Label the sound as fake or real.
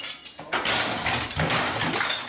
real